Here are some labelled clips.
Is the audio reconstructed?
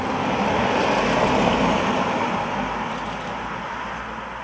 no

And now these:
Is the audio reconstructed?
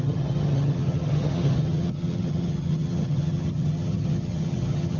yes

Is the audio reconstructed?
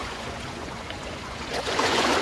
yes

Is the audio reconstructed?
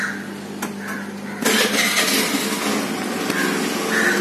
no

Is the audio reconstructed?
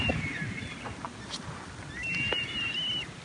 no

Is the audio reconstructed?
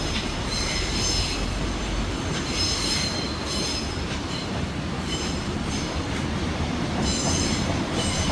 yes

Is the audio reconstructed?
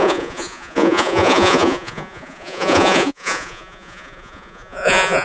yes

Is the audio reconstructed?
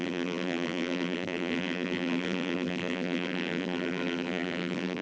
yes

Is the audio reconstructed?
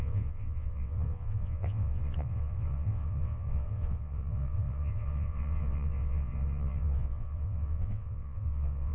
yes